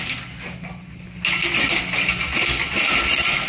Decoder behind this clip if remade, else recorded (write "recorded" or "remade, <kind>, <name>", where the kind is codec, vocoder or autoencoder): recorded